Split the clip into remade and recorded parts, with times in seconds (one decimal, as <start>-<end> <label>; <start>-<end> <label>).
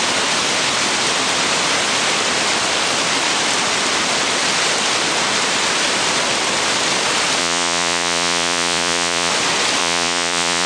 0.0-7.4 recorded; 7.4-9.3 remade; 9.3-9.8 recorded; 9.8-10.7 remade